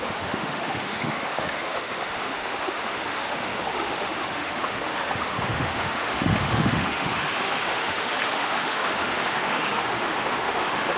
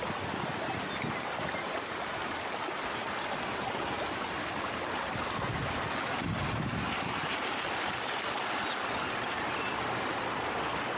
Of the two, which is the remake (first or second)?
first